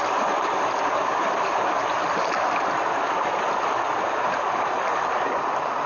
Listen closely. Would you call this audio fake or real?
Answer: real